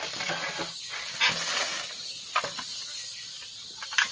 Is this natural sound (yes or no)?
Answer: yes